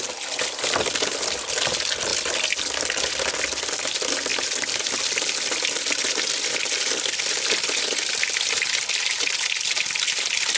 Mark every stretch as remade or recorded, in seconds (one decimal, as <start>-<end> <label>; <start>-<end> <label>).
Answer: 0.0-10.6 recorded